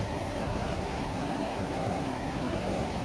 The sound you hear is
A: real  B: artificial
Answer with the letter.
B